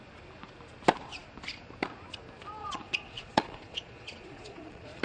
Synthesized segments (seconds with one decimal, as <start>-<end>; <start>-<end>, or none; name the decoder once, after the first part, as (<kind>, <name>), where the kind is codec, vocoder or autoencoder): 2.6-5.0 (vocoder, Vocos)